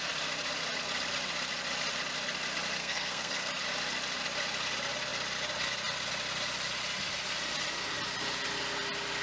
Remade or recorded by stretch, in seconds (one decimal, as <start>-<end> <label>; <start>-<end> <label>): 0.0-2.8 recorded; 2.8-3.5 remade; 3.5-9.2 recorded